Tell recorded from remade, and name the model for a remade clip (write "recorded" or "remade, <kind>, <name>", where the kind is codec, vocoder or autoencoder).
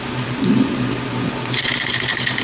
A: recorded